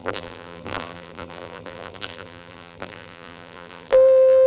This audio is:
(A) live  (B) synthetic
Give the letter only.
B